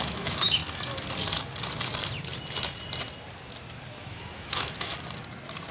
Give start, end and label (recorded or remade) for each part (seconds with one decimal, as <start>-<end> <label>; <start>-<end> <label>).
0.0-0.6 remade; 0.6-4.0 recorded; 4.0-4.9 remade; 4.9-5.7 recorded